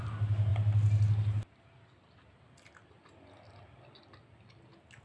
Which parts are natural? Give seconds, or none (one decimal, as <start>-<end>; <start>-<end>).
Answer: 0.0-5.0